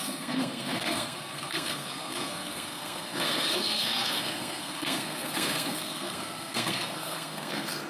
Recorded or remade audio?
remade